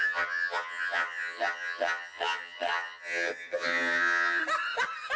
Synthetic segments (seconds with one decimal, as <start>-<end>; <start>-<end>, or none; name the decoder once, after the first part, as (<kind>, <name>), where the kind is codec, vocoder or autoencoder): 0.0-4.4 (vocoder, HiFi-GAN)